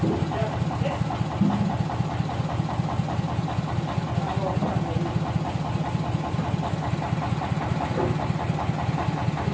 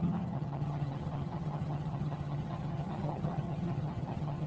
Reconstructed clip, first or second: second